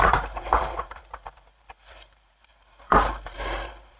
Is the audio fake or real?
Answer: fake